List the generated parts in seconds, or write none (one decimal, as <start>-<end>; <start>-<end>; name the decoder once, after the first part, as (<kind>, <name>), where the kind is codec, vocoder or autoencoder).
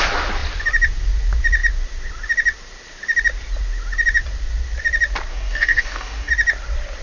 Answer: 5.3-6.3 (codec, DAC)